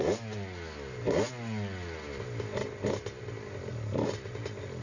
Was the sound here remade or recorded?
recorded